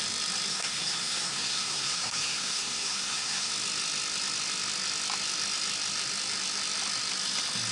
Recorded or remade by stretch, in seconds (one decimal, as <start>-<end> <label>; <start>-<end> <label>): 0.0-0.5 recorded; 0.5-3.5 remade; 3.5-7.7 recorded